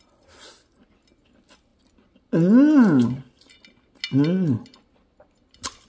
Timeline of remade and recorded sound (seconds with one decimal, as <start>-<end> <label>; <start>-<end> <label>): 0.0-5.9 recorded